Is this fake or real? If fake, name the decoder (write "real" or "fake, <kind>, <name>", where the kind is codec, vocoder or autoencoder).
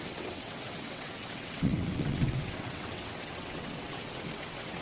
fake, vocoder, WaveNeXt